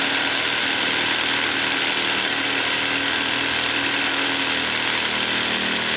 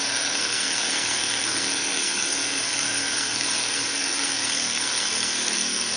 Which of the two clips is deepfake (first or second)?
second